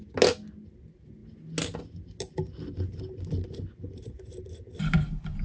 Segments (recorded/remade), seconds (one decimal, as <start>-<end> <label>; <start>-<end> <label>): 0.0-5.4 recorded